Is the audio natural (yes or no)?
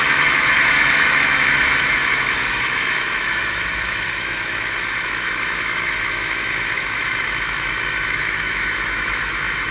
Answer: no